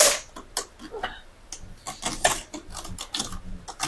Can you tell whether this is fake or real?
real